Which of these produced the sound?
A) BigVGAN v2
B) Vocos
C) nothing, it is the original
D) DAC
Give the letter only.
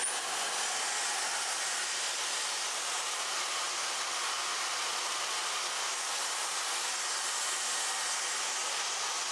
C